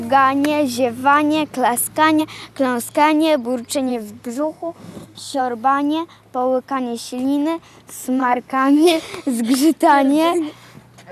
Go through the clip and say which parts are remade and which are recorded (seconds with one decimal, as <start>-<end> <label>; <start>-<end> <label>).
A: 0.0-3.9 recorded; 3.9-5.4 remade; 5.4-8.2 recorded; 8.2-9.0 remade; 9.0-11.1 recorded